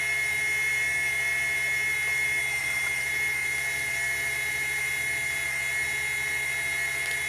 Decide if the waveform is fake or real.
real